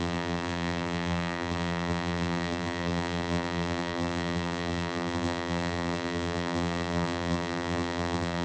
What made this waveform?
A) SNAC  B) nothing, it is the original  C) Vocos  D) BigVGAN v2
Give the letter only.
D